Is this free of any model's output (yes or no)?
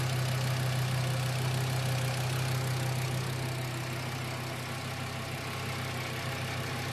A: yes